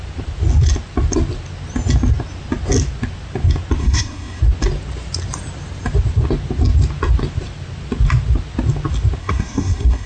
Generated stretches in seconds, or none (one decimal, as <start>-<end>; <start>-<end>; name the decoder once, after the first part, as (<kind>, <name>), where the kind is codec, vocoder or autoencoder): 3.8-4.4 (codec, SNAC); 9.2-10.1